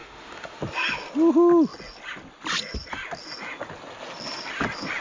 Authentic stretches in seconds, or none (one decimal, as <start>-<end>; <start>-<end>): 0.6-5.0